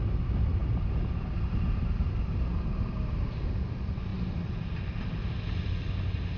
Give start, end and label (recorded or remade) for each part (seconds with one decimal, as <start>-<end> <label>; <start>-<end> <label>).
0.0-6.4 recorded